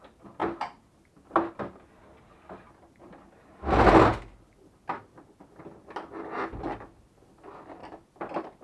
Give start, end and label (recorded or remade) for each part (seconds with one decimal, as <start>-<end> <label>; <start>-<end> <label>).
0.0-8.6 recorded